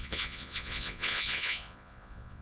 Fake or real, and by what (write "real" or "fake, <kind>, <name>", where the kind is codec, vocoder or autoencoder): fake, vocoder, Vocos